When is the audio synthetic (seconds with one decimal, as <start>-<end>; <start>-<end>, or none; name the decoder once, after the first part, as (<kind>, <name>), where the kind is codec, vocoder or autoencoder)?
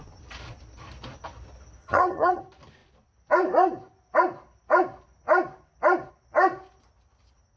1.8-2.4 (vocoder, HiFi-GAN)